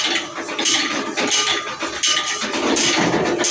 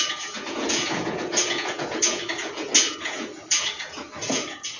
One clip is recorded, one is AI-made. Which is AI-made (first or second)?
second